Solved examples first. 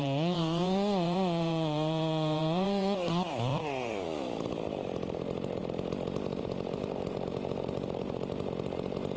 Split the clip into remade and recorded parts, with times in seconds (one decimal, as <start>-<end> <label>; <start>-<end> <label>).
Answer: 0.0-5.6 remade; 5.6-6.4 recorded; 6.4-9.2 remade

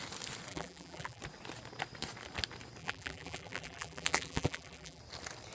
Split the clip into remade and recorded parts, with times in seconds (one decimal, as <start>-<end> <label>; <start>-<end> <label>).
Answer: 0.0-0.5 recorded; 0.5-1.2 remade; 1.2-2.8 recorded; 2.8-5.0 remade; 5.0-5.5 recorded

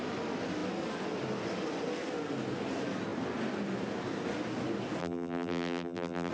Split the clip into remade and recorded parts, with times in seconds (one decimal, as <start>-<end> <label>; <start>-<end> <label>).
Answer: 0.0-5.0 recorded; 5.0-6.3 remade

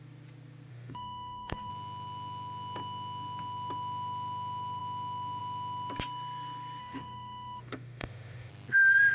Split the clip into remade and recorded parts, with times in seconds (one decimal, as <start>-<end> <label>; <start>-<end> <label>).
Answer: 0.0-0.7 recorded; 0.7-1.7 remade; 1.7-6.8 recorded; 6.8-8.5 remade; 8.5-9.1 recorded

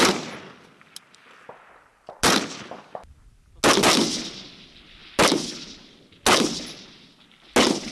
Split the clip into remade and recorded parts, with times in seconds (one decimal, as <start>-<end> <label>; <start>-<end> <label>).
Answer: 0.0-7.9 recorded